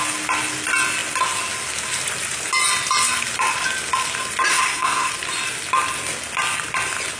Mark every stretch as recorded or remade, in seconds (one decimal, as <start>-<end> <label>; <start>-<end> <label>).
0.0-4.5 recorded; 4.5-5.1 remade; 5.1-7.2 recorded